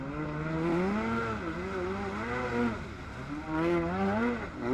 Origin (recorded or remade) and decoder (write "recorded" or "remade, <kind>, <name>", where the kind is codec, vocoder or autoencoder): recorded